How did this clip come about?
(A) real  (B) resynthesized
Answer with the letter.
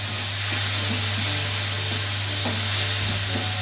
A